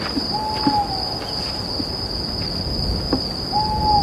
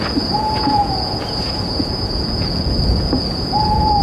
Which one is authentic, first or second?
first